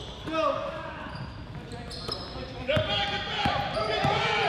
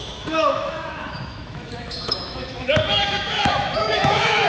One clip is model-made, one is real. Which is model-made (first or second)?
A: second